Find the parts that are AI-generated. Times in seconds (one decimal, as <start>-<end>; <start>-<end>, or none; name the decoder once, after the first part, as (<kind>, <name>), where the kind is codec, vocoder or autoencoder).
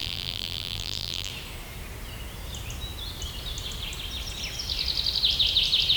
0.0-1.3 (vocoder, BigVGAN v2)